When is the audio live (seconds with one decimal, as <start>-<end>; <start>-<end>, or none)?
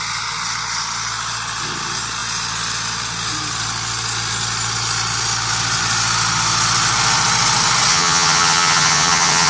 0.0-7.9